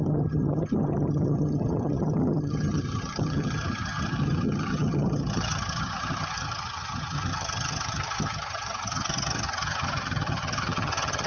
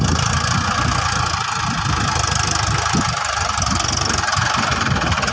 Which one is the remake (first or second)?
first